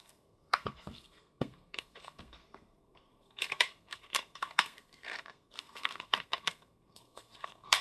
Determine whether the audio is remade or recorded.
remade